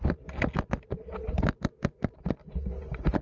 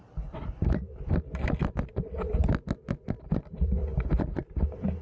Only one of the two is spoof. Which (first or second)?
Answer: second